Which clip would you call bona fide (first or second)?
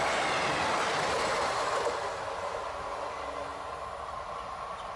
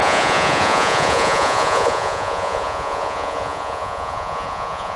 first